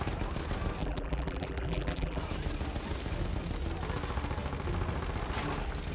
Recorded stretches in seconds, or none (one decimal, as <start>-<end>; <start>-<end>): 0.0-0.8; 2.2-5.9